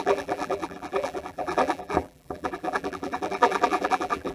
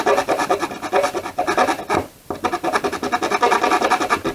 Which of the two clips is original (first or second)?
second